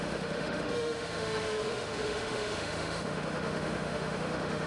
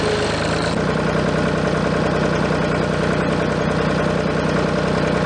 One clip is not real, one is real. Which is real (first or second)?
second